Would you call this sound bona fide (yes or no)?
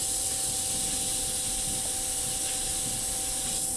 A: yes